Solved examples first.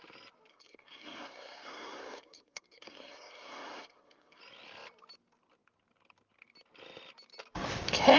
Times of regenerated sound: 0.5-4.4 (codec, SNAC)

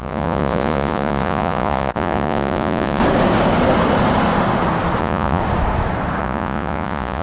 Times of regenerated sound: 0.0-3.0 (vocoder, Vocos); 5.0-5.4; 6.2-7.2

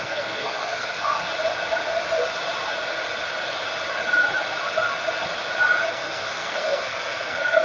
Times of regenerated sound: 0.0-1.3 (codec, SNAC); 5.9-7.6

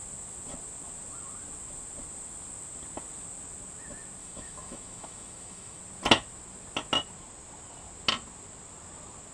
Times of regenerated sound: 4.2-5.8 (autoencoder, DAC-VAE)

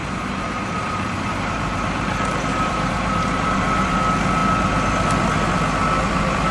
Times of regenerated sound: 0.0-3.9 (vocoder, BigVGAN v2)